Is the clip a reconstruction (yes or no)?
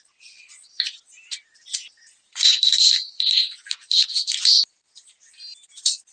yes